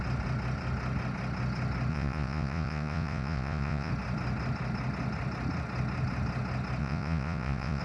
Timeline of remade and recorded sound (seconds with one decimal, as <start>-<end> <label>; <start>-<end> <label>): 0.0-1.9 recorded; 1.9-3.9 remade; 3.9-6.8 recorded; 6.8-7.8 remade